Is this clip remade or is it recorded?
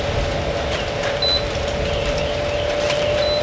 recorded